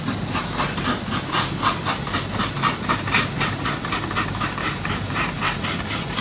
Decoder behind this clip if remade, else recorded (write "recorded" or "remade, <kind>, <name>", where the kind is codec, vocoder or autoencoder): recorded